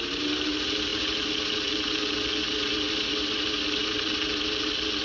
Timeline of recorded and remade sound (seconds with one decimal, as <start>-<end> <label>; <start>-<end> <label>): 0.0-5.0 recorded